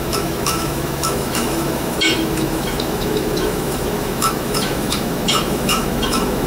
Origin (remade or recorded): remade